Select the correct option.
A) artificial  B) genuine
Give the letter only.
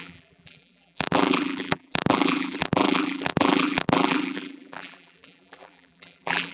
A